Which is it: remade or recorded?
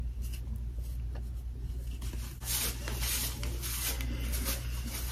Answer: recorded